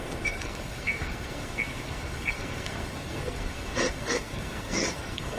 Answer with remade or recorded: remade